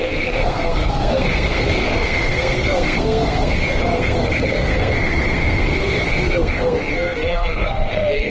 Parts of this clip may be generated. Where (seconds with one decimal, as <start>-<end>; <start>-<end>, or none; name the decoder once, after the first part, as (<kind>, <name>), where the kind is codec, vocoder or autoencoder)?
0.0-8.3 (codec, SNAC)